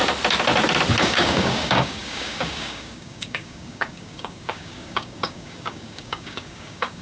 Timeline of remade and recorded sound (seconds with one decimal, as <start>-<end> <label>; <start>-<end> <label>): 0.0-1.0 recorded; 1.0-7.0 remade